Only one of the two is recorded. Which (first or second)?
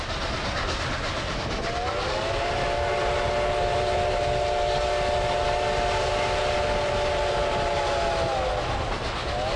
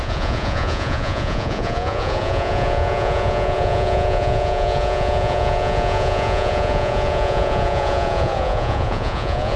first